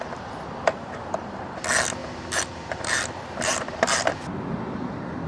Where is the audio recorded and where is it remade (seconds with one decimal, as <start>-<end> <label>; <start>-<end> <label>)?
0.0-2.0 recorded; 2.0-5.3 remade